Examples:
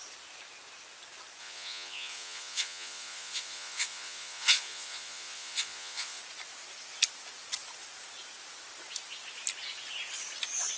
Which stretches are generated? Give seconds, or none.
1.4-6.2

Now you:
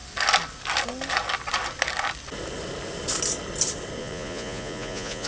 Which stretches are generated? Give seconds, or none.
4.0-5.3

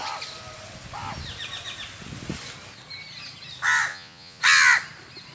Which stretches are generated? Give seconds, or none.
3.9-4.4

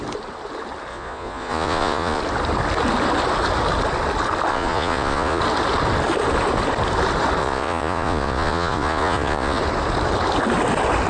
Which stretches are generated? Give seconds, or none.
0.9-2.2; 4.5-5.4; 7.4-9.6

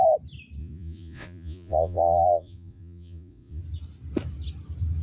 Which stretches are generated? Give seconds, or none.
0.6-3.6

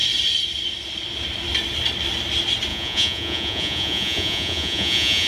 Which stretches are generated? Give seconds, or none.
2.7-5.3

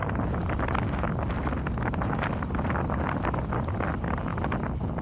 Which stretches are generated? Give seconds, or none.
none

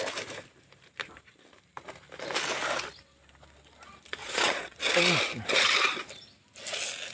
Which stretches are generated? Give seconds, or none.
4.2-4.8